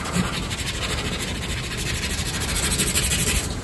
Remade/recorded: recorded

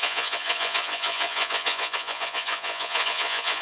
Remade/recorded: remade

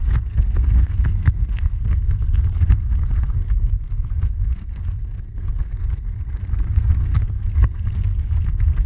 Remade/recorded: remade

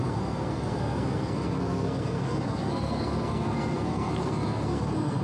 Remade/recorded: remade